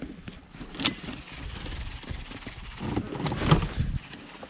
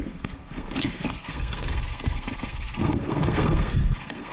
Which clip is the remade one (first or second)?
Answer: second